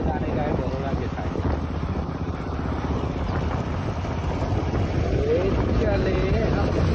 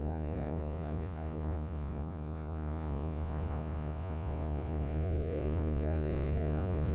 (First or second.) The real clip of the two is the first